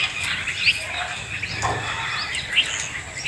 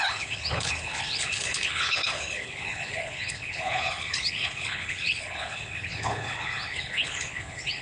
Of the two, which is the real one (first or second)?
first